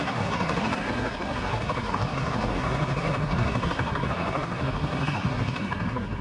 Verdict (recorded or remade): remade